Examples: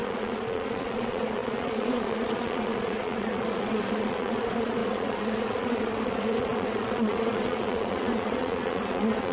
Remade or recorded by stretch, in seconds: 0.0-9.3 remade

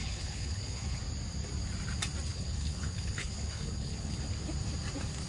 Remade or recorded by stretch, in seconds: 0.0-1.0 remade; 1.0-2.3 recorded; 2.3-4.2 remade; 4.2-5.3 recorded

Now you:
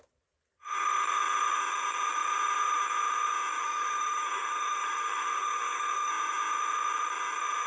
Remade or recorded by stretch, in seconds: 0.0-3.6 recorded; 3.6-6.1 remade; 6.1-7.7 recorded

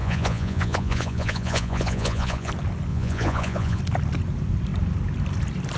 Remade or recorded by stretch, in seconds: 0.0-2.5 remade; 2.5-2.9 recorded; 2.9-3.8 remade; 3.8-5.8 recorded

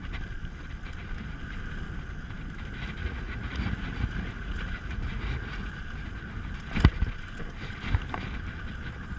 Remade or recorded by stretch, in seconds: 0.0-3.0 recorded; 3.0-5.7 remade; 5.7-9.2 recorded

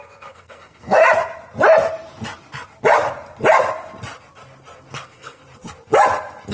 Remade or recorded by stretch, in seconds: 0.0-1.0 remade; 1.0-4.9 recorded; 4.9-5.4 remade; 5.4-6.5 recorded

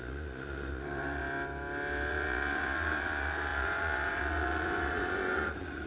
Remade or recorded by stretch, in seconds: 0.0-1.2 remade; 1.2-2.1 recorded; 2.1-5.9 remade